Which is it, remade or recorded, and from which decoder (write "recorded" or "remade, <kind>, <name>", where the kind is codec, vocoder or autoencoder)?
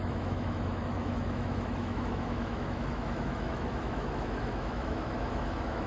remade, autoencoder, DAC-VAE